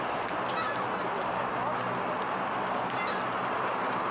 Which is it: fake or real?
real